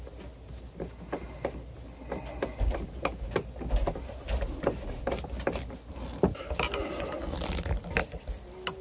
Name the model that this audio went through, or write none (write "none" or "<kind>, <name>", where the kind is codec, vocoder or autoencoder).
none